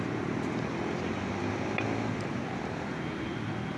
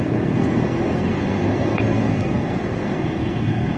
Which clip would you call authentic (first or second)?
first